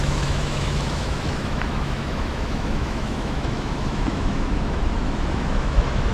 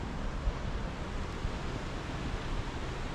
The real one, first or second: second